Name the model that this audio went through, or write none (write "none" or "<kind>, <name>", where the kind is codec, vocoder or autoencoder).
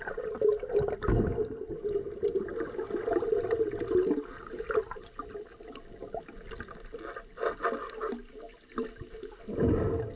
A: none